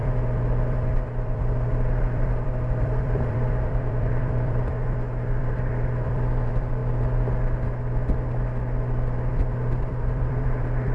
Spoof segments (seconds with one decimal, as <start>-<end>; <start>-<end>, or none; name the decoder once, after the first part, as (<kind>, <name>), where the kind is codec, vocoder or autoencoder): 0.0-6.8 (vocoder, BigVGAN v2); 9.3-10.9